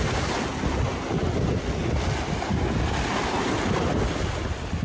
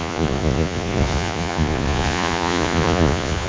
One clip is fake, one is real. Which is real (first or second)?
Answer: first